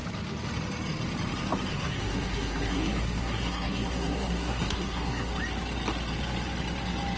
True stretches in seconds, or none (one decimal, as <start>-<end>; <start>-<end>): 0.0-1.7; 5.3-7.2